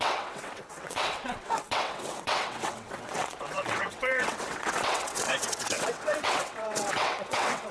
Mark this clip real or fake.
fake